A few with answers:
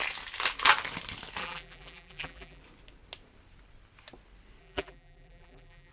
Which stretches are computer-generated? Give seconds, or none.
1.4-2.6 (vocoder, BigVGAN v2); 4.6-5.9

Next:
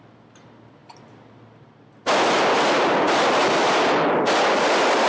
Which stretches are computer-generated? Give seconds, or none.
none

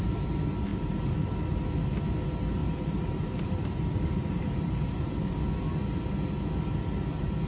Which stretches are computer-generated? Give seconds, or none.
0.7-1.6 (vocoder, BigVGAN v2); 2.6-5.4

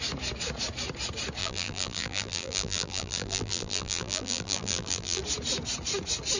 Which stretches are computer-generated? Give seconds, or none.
1.4-5.2 (vocoder, BigVGAN v2)

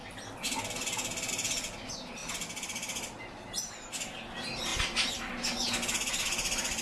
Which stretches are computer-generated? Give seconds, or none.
4.7-5.3 (vocoder, BigVGAN v2)

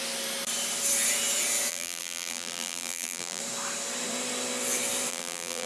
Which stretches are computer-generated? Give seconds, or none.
1.7-3.4 (vocoder, BigVGAN v2); 5.1-5.7

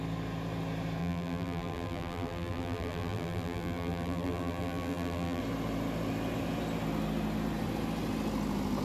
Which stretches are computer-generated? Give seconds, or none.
1.0-5.4 (vocoder, BigVGAN v2)

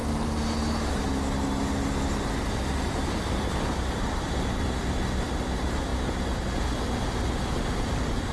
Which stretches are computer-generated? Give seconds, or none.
3.2-5.9 (vocoder, BigVGAN v2); 7.6-8.3